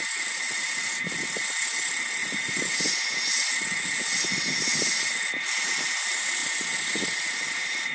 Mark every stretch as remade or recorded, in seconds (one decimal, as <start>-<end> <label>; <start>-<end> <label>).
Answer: 0.0-2.2 recorded; 2.2-3.2 remade; 3.2-7.9 recorded